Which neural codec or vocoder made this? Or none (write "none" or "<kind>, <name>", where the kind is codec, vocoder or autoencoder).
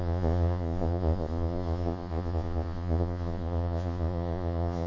vocoder, Vocos